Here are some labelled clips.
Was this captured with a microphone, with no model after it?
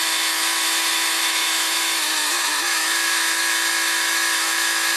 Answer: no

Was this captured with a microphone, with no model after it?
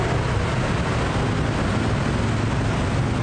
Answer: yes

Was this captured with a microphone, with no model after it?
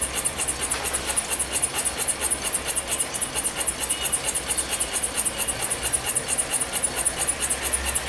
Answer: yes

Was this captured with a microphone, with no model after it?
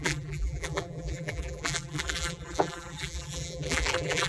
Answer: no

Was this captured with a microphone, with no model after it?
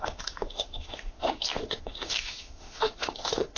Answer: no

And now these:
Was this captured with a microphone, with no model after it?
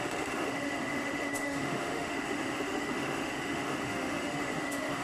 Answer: no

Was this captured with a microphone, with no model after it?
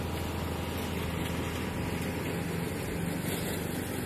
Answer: yes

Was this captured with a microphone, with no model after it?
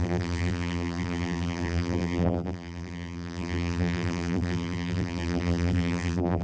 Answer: no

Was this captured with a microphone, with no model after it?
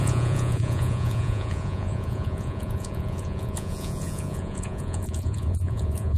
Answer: no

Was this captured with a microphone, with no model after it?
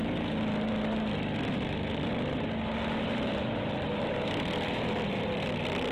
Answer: yes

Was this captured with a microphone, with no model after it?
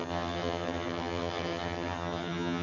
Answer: no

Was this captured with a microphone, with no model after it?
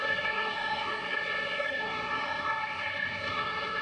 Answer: no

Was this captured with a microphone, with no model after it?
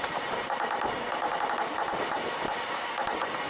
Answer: yes